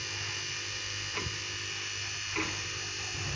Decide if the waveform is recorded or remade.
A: remade